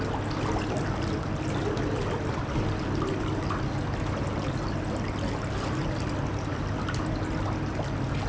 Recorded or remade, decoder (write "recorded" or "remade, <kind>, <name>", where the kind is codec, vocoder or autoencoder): recorded